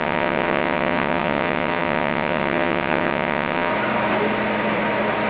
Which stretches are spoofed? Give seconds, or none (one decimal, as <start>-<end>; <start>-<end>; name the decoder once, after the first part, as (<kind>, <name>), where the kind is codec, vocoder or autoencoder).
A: 0.0-3.7 (vocoder, WaveNeXt)